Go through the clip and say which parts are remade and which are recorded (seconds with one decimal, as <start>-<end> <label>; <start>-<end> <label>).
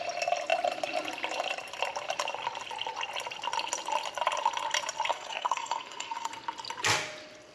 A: 0.0-5.1 recorded; 5.1-6.3 remade; 6.3-7.5 recorded